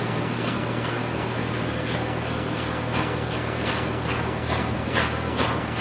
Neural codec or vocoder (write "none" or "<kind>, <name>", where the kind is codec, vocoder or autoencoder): codec, SNAC